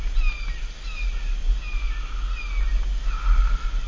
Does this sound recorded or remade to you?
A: recorded